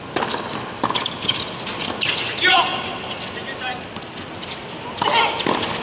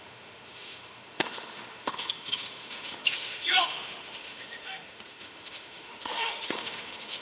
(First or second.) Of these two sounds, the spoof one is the second